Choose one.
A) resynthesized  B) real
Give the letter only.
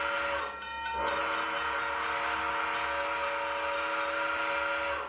B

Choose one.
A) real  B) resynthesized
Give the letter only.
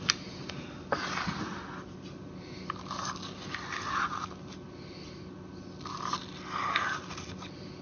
A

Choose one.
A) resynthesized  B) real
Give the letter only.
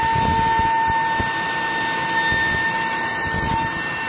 B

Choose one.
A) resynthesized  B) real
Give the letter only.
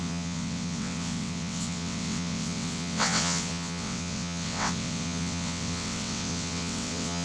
A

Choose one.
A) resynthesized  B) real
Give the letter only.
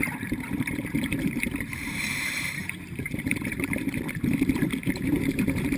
A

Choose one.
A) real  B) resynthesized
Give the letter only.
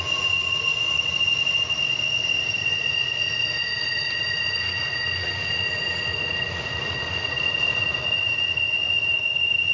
B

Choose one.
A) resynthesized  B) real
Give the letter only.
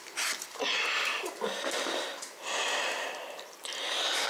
B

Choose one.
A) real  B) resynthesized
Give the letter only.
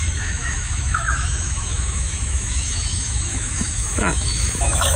B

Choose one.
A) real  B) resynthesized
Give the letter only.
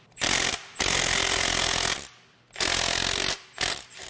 A